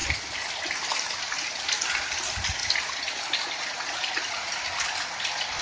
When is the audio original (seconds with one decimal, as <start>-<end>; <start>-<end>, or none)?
0.0-5.6